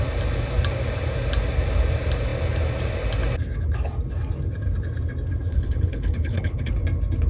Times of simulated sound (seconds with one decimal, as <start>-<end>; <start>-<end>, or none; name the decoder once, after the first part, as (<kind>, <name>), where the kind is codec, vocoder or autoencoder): 5.5-6.7 (codec, HILCodec)